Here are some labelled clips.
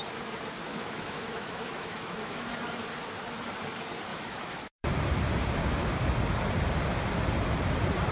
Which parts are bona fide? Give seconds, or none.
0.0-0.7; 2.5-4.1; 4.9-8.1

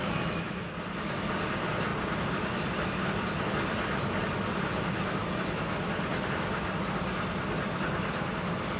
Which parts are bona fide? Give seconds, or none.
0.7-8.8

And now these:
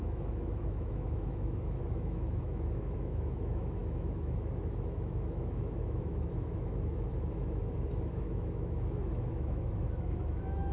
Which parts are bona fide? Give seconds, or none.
none

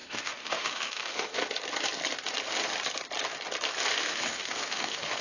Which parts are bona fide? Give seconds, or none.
1.4-4.2

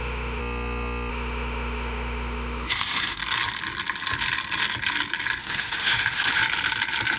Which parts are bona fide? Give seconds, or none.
0.4-1.1; 3.2-5.4; 6.4-7.2

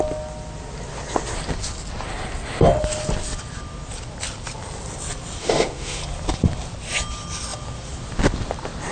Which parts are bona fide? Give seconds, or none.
0.0-5.4; 6.0-8.9